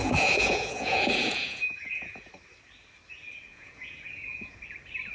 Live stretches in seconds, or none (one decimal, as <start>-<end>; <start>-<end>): 2.3-3.5; 4.6-5.1